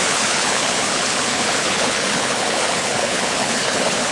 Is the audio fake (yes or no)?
yes